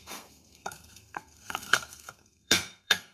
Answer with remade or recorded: remade